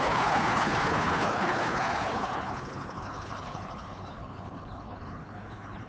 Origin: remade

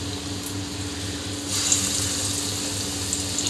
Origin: recorded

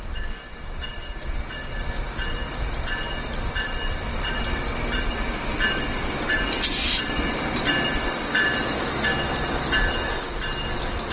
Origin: recorded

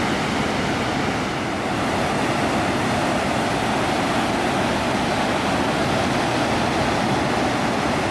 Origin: recorded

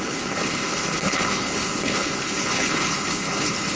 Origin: remade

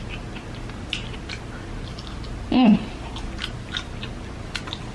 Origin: recorded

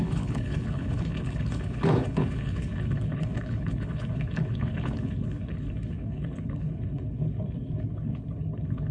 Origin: remade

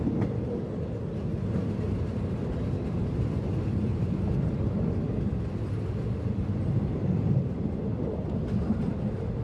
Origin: recorded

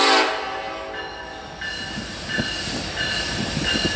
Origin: recorded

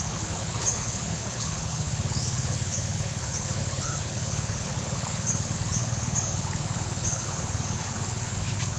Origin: remade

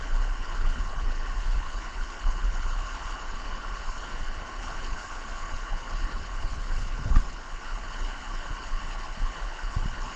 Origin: remade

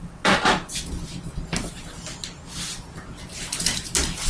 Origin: recorded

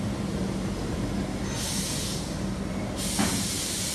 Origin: recorded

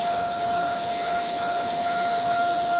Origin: remade